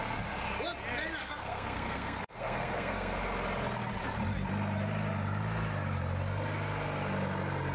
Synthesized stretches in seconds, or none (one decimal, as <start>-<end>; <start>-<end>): 1.2-3.2